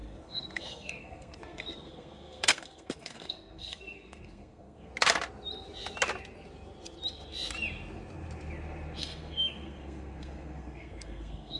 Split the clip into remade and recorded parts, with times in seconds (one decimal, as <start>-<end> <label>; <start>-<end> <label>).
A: 0.0-4.9 remade; 4.9-9.0 recorded; 9.0-11.6 remade